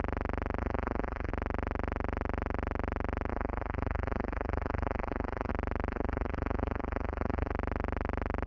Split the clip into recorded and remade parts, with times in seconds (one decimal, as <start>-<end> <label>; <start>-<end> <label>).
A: 0.0-0.6 recorded; 0.6-1.3 remade; 1.3-3.3 recorded; 3.3-5.5 remade; 5.5-5.9 recorded; 5.9-7.5 remade; 7.5-8.5 recorded